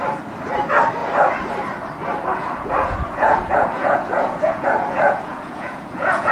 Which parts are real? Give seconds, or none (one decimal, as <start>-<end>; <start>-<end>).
0.0-2.4